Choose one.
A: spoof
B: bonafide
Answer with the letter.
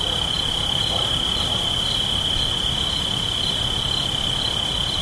B